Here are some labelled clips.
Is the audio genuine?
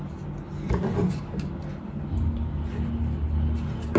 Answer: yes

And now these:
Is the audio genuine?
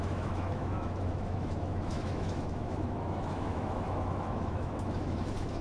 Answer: no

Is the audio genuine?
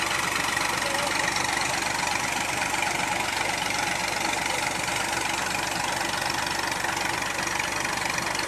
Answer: yes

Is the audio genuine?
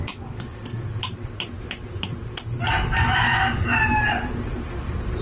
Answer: yes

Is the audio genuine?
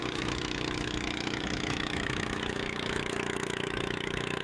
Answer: no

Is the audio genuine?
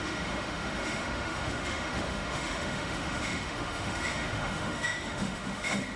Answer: no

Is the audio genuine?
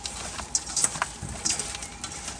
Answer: yes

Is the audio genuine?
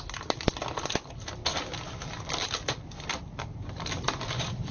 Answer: yes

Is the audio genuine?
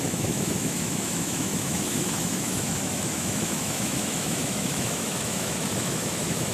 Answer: no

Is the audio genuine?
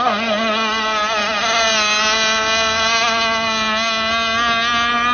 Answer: yes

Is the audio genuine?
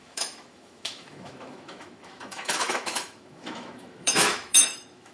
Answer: no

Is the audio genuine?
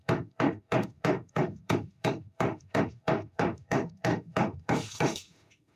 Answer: no